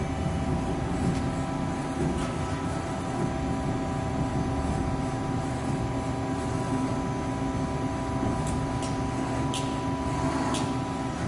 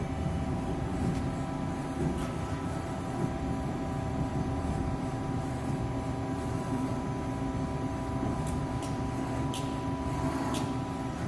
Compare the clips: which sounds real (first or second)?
first